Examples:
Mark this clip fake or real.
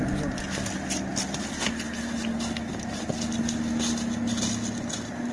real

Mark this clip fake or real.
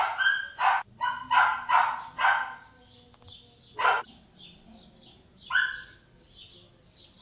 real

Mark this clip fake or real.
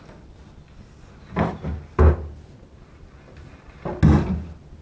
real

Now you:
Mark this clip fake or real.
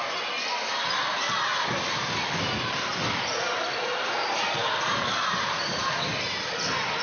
real